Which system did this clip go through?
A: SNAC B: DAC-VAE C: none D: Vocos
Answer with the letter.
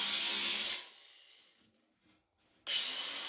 C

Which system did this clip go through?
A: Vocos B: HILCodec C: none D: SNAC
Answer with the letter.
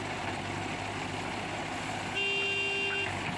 C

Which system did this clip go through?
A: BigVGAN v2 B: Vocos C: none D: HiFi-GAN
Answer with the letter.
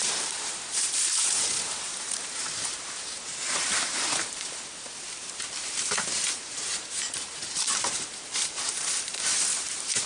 A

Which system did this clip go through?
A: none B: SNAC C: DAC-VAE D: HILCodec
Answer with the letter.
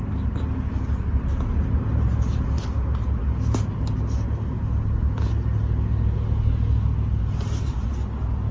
A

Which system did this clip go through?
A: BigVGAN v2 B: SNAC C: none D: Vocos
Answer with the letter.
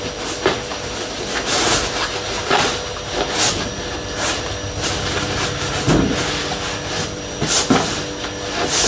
C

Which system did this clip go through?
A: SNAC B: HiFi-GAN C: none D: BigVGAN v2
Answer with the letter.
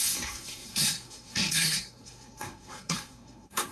A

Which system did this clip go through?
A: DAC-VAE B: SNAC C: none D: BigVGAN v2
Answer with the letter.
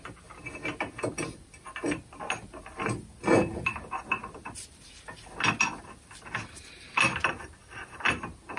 C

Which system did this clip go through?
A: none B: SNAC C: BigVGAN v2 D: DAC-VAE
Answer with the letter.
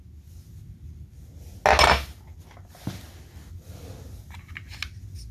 A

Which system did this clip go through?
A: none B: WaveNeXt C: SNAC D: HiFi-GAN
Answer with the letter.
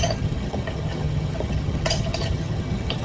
D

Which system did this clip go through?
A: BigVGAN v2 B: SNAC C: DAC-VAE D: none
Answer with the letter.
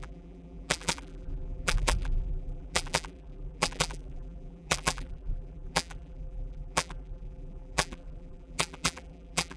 A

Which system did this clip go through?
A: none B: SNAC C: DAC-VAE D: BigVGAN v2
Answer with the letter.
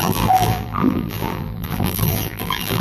D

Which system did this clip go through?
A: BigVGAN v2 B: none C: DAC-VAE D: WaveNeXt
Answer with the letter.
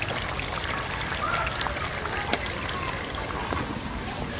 B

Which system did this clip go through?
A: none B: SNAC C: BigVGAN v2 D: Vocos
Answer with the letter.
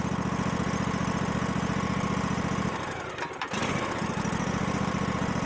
A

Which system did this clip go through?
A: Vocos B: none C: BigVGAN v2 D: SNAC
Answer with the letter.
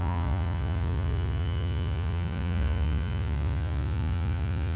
A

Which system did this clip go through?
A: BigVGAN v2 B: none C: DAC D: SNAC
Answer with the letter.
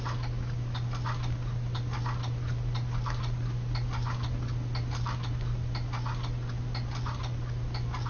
B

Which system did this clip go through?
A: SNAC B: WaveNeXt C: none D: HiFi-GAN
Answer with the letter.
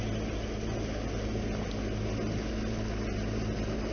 C